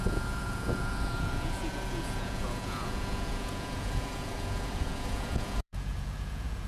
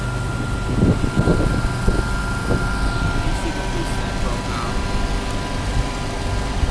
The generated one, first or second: first